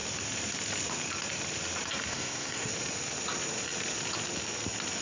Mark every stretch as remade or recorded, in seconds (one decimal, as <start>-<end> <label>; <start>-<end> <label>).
0.0-2.1 recorded; 2.1-2.7 remade; 2.7-5.0 recorded